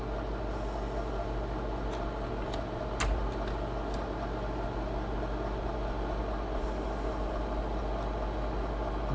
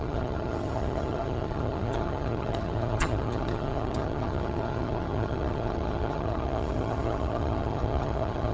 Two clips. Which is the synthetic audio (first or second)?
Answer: second